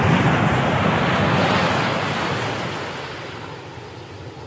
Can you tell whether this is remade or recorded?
recorded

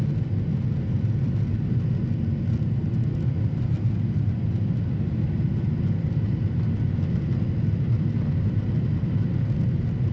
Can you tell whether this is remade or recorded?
recorded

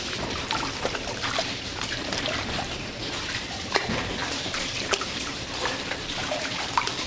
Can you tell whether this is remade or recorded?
remade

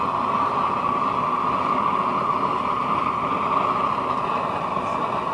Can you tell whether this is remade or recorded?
recorded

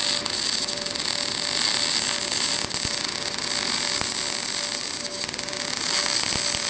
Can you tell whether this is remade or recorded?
recorded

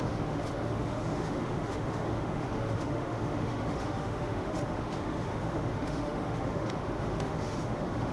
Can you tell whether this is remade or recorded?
remade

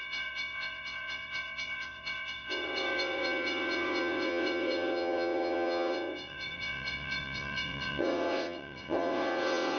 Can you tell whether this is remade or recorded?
remade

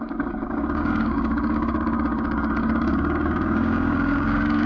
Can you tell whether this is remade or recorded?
remade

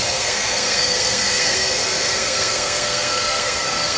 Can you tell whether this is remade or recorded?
remade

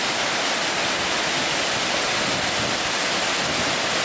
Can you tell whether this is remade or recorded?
recorded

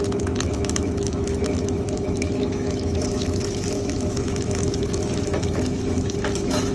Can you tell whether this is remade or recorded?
remade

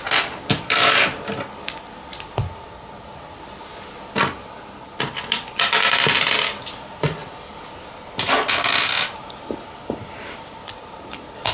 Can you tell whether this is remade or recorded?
recorded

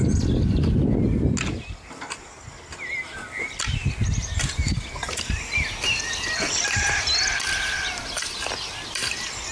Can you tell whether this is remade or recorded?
recorded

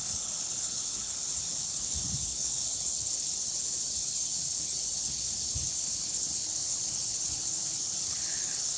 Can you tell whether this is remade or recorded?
remade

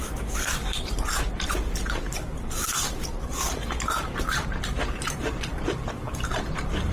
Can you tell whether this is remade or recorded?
remade